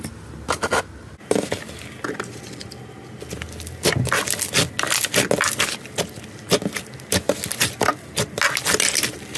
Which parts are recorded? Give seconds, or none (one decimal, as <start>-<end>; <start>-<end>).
0.0-9.4